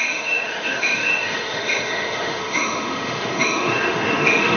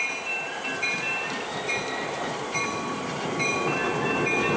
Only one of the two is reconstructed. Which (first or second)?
first